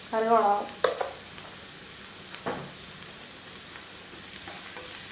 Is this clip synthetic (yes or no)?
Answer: no